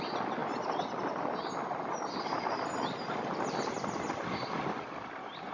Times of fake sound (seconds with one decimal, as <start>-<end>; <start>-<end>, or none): none